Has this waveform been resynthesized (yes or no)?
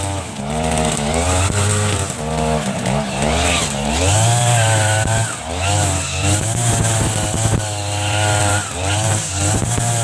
no